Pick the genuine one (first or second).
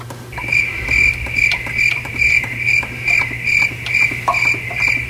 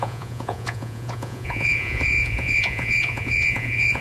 first